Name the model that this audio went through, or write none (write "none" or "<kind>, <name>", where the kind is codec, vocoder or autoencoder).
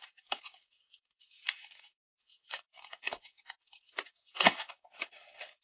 codec, DAC